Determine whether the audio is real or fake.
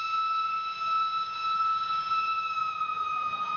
fake